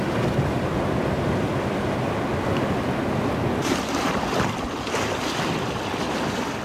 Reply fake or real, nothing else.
real